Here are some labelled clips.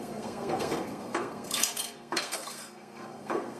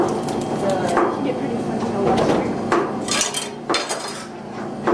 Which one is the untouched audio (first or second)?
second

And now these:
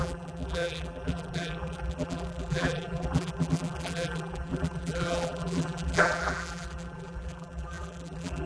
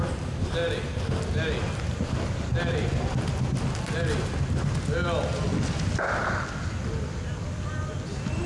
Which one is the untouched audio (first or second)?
second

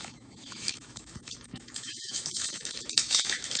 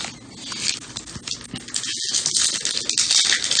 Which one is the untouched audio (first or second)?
second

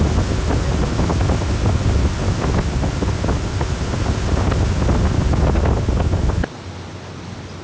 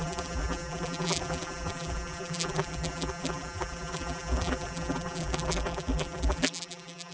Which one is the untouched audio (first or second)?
first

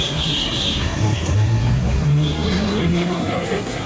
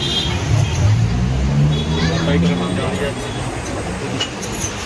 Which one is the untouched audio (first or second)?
second